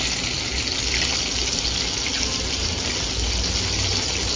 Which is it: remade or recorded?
recorded